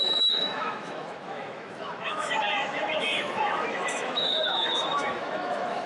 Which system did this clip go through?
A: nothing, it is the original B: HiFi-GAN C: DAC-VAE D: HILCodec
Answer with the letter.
C